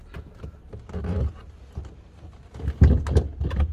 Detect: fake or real real